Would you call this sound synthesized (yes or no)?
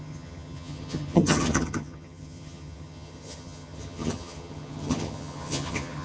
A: yes